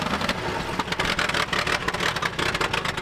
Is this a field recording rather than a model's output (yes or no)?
yes